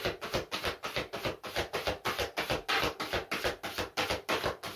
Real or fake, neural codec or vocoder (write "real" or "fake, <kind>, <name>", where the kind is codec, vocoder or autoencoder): real